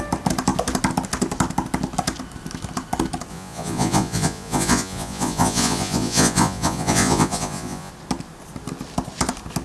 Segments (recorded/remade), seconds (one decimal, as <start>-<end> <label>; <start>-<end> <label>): 0.0-3.3 recorded; 3.3-7.9 remade; 7.9-9.6 recorded